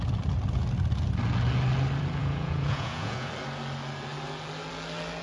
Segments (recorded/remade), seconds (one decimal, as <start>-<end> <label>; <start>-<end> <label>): 0.0-2.2 recorded; 2.2-3.3 remade; 3.3-5.2 recorded